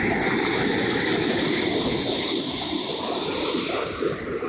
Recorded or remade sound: recorded